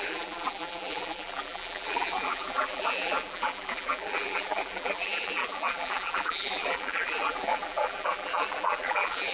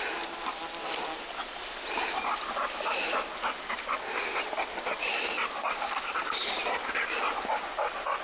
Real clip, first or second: second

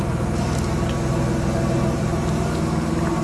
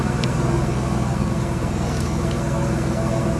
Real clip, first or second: first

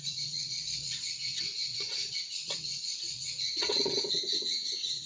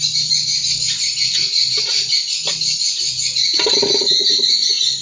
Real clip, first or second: second